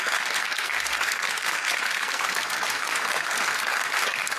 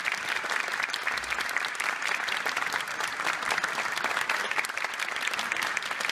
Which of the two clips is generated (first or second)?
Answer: first